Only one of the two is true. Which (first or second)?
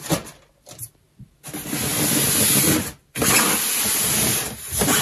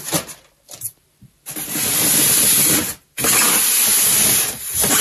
first